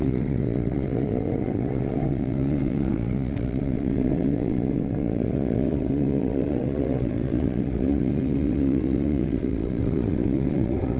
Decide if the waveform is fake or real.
fake